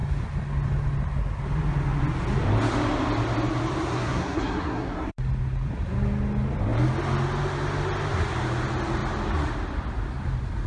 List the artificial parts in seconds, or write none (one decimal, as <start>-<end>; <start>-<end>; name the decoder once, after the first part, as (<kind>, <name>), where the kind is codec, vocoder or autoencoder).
3.9-5.1 (codec, SNAC)